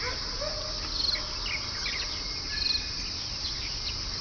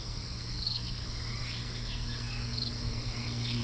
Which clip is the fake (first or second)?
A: second